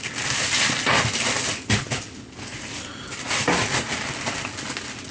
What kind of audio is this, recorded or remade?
recorded